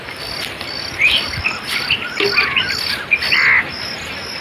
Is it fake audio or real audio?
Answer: real